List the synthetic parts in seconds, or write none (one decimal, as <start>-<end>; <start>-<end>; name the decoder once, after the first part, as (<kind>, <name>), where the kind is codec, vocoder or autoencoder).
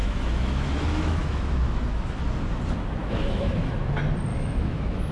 0.0-2.2 (autoencoder, DAC-VAE); 3.0-3.9; 4.3-5.1